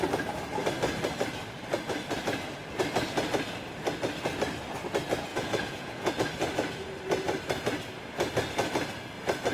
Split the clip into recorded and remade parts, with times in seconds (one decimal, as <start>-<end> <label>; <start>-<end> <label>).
0.0-5.3 recorded; 5.3-6.1 remade; 6.1-9.5 recorded